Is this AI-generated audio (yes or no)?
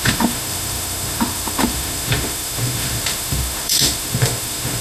yes